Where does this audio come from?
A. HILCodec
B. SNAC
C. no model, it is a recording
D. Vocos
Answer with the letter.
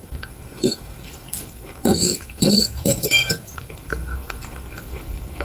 B